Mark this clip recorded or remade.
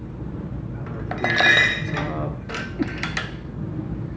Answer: recorded